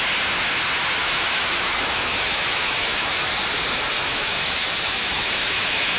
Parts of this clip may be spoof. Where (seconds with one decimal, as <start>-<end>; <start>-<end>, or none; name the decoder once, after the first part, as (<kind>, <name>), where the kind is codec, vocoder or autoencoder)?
1.0-3.3 (autoencoder, DAC-VAE); 4.1-6.0

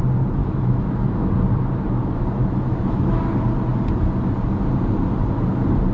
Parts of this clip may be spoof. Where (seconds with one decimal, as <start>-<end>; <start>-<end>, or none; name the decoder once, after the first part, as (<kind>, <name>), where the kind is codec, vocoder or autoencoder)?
0.4-1.3 (autoencoder, DAC-VAE); 2.4-3.2